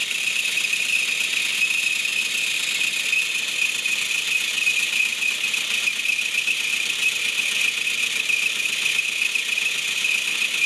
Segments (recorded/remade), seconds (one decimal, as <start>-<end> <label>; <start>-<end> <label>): 0.0-0.9 remade; 0.9-10.7 recorded